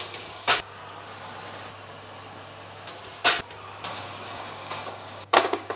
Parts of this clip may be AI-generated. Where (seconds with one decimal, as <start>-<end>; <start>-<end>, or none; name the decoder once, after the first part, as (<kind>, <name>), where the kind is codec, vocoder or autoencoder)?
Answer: 0.0-0.8 (codec, DAC); 3.9-5.8